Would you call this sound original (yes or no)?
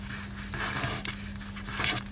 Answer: yes